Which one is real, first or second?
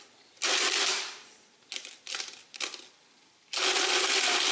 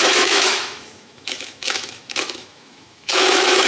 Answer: first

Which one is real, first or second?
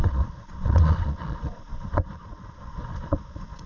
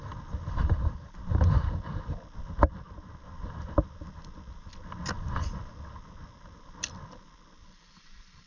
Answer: second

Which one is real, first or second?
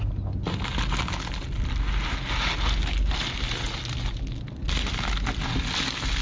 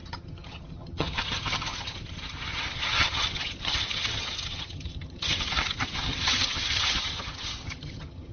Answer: first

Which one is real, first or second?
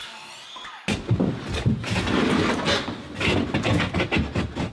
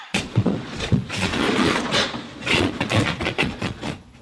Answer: first